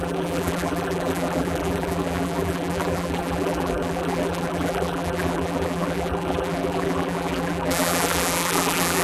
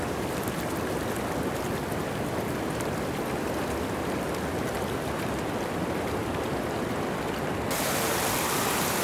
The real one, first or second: second